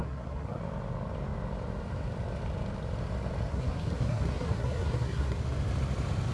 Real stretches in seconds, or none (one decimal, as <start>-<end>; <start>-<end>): 0.6-3.5; 5.4-6.3